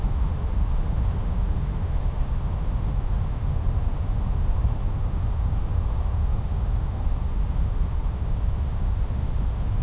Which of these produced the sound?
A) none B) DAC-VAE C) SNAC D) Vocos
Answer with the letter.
B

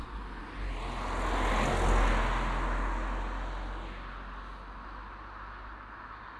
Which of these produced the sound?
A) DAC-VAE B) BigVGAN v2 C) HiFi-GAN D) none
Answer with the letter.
D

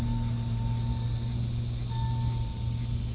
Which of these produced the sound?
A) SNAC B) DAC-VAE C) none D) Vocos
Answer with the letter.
C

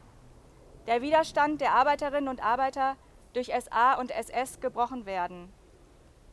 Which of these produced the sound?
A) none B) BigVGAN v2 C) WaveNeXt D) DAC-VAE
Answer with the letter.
A